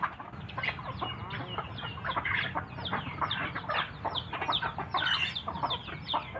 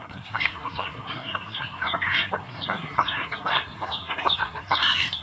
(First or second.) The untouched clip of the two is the first